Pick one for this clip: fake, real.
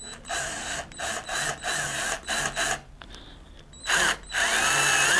real